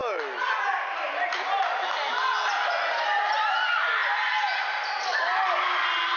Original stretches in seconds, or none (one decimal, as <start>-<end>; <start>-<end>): 0.0-6.2